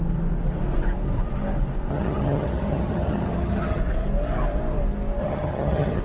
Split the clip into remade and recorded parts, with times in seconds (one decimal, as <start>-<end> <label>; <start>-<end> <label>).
0.0-1.9 recorded; 1.9-3.8 remade; 3.8-5.2 recorded; 5.2-6.0 remade